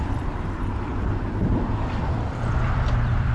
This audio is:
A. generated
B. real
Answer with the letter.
A